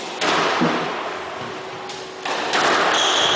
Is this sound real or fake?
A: fake